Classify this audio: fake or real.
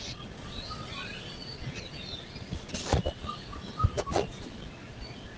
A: fake